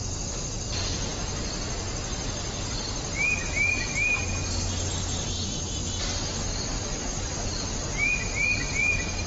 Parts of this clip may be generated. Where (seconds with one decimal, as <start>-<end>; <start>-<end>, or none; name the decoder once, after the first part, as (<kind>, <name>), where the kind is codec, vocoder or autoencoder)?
none